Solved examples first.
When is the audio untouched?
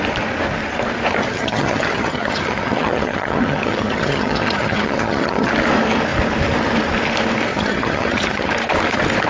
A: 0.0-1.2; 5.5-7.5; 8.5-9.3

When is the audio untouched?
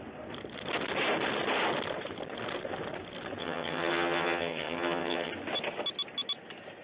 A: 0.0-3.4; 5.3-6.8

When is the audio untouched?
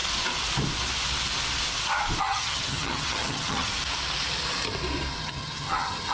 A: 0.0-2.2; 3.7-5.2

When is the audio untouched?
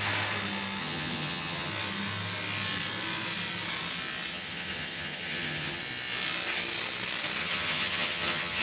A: 0.0-0.8; 1.7-4.3; 5.8-7.4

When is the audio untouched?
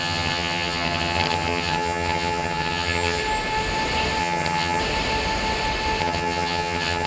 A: 3.2-4.2; 4.8-6.0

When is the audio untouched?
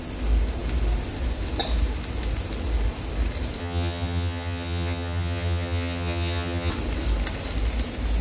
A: 0.0-3.6; 6.7-8.2